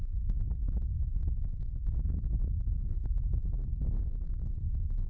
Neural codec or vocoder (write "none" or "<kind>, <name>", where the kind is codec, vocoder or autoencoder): codec, SNAC